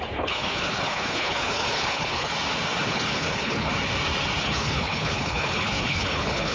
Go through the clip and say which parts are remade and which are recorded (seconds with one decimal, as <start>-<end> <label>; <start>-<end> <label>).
0.0-2.3 remade; 2.3-2.9 recorded; 2.9-3.7 remade; 3.7-4.4 recorded; 4.4-6.5 remade